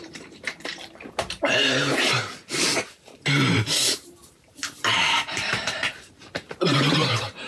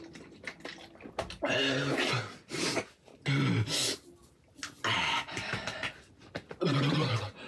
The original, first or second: second